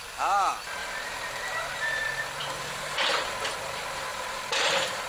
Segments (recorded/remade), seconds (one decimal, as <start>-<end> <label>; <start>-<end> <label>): 0.0-0.8 recorded; 0.8-2.0 remade; 2.0-4.1 recorded; 4.1-5.1 remade